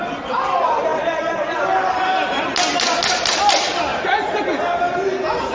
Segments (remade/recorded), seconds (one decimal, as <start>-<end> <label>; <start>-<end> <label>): 0.0-5.5 recorded